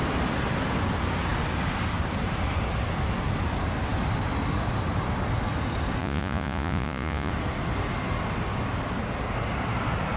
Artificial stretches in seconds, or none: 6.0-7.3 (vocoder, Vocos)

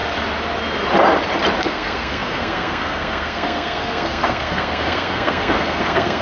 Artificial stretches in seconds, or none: 1.6-6.2 (codec, SNAC)

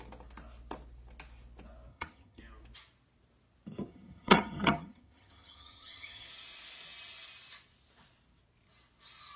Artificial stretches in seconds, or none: 1.9-2.4 (vocoder, HiFi-GAN); 3.9-6.3

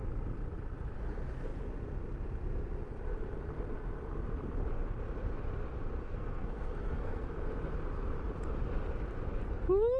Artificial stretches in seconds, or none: 6.0-7.3 (codec, SNAC)

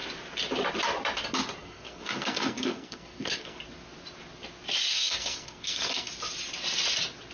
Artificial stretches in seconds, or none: 1.6-3.6 (codec, SNAC); 4.9-6.1